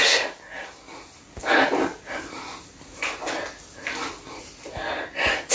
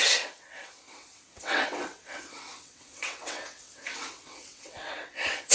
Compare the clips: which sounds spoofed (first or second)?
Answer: second